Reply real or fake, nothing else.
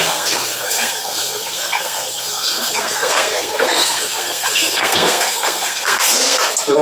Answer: fake